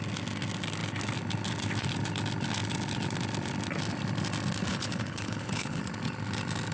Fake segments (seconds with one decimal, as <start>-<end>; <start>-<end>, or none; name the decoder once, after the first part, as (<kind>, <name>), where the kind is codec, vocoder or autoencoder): 4.7-5.8 (codec, HILCodec)